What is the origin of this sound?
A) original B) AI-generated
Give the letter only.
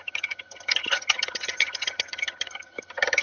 B